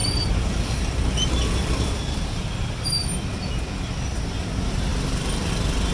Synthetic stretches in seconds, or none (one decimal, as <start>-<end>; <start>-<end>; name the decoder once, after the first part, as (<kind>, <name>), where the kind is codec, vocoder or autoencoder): 0.0-3.5 (vocoder, BigVGAN v2); 4.9-5.5